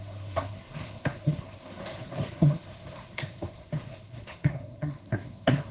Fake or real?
fake